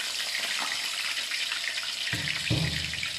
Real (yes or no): no